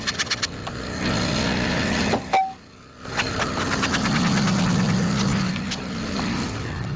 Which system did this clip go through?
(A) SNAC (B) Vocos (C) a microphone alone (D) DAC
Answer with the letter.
C